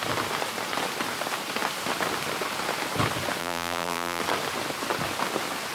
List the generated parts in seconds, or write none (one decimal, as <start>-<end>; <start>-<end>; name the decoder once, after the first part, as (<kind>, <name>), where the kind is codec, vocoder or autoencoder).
3.4-4.2 (vocoder, BigVGAN v2)